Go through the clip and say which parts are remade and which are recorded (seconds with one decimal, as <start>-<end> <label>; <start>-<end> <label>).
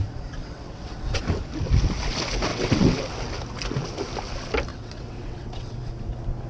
0.0-0.4 recorded; 0.4-1.2 remade; 1.2-2.5 recorded; 2.5-3.0 remade; 3.0-4.7 recorded; 4.7-5.9 remade; 5.9-6.5 recorded